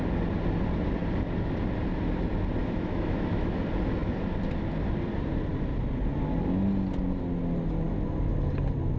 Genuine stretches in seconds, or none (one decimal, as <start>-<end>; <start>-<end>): 0.0-2.6; 3.6-9.0